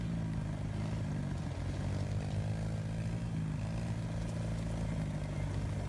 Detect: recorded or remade recorded